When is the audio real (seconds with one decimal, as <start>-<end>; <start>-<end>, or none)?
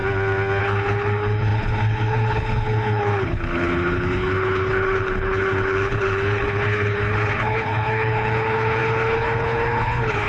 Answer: 0.0-0.6